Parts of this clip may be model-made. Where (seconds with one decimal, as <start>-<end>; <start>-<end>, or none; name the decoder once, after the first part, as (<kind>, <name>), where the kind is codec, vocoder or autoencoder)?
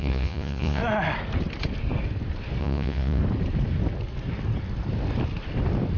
0.0-0.8 (vocoder, Vocos); 2.6-3.2